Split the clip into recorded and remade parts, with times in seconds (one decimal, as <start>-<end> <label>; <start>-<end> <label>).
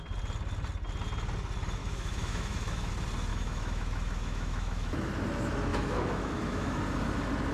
0.0-1.8 recorded; 1.8-2.9 remade; 2.9-3.3 recorded; 3.3-5.1 remade; 5.1-5.7 recorded; 5.7-6.8 remade; 6.8-7.5 recorded